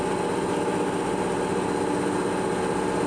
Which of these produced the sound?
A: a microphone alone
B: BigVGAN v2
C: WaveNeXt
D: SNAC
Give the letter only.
A